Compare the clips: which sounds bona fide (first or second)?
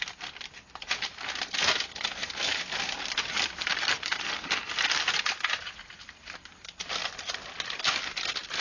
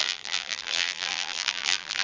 first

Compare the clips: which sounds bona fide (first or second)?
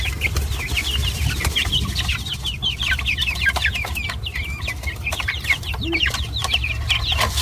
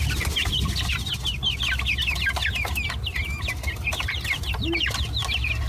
second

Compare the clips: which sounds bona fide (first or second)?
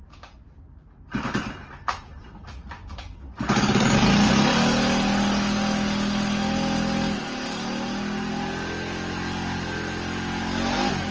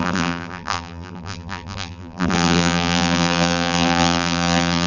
first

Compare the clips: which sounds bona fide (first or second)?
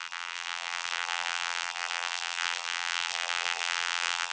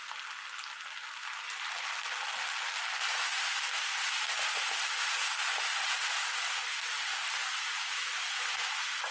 second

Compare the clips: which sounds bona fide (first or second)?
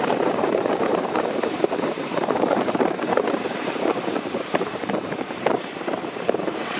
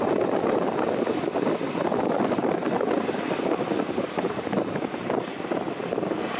second